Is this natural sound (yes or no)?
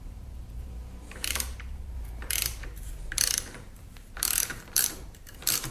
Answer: no